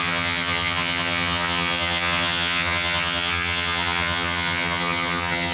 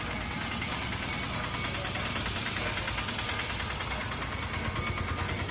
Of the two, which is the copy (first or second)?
first